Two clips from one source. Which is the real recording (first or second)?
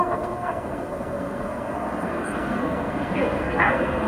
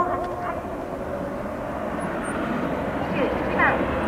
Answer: second